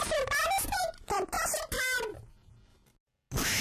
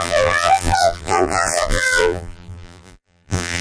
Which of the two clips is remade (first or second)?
second